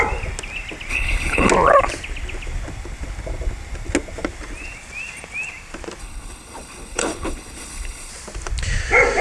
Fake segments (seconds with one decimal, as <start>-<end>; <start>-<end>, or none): 0.9-1.5; 6.0-8.1

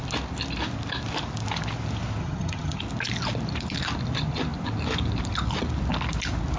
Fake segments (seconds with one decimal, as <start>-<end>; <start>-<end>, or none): 2.2-2.8

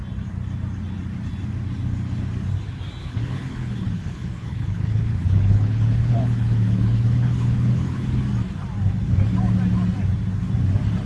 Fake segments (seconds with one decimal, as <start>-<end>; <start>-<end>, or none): 3.0-8.2

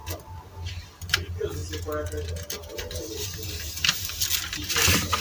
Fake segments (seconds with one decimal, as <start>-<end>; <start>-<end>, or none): 0.7-1.6; 4.7-5.2

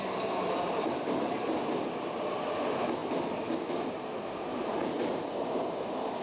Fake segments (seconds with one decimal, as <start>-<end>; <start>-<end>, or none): none

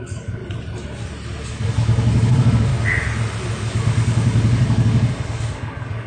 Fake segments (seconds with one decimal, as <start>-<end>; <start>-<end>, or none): 0.0-0.4; 1.5-2.7; 3.5-6.1